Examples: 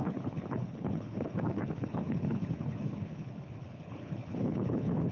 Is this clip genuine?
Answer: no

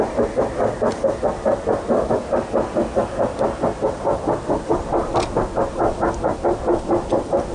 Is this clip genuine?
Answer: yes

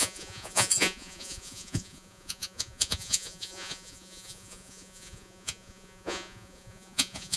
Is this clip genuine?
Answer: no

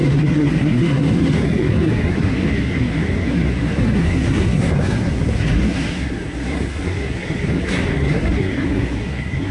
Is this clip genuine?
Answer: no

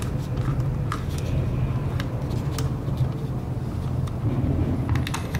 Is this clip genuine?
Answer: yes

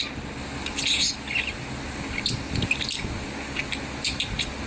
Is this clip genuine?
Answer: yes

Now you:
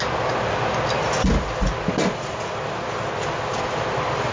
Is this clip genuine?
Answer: yes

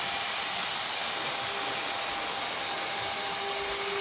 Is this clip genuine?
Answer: yes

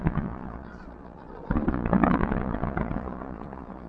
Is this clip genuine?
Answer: no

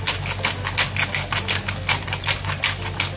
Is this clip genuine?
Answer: yes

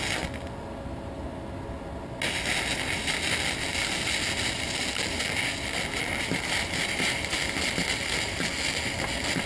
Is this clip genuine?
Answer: yes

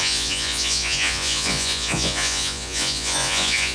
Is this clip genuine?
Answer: no